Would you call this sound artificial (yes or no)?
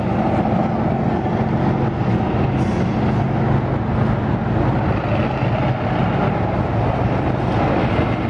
no